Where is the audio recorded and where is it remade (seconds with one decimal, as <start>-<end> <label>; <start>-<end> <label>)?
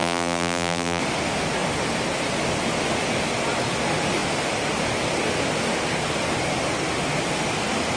0.0-1.0 remade; 1.0-8.0 recorded